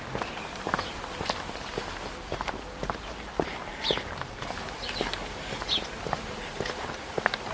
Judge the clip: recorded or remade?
recorded